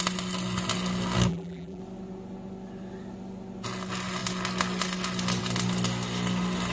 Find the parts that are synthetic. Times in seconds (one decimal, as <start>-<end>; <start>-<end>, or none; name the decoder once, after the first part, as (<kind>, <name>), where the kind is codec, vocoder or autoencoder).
1.3-1.8 (vocoder, BigVGAN v2)